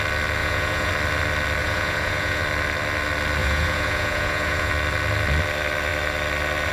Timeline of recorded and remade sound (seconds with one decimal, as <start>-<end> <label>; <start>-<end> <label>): 0.0-0.4 recorded; 0.4-0.9 remade; 0.9-1.6 recorded; 1.6-2.4 remade; 2.4-3.4 recorded; 3.4-4.7 remade; 4.7-6.7 recorded